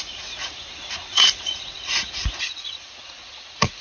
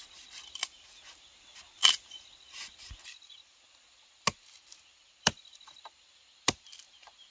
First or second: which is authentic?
second